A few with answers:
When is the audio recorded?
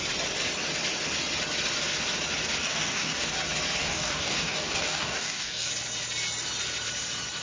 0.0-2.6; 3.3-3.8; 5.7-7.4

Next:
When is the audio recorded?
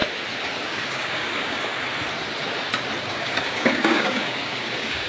0.0-0.6; 1.7-3.0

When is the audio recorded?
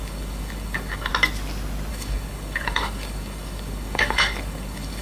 1.1-1.9